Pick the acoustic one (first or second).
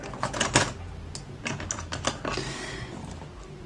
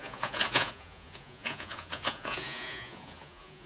first